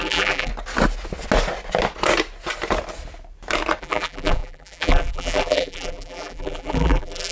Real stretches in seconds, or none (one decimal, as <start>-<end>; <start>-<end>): 0.5-3.8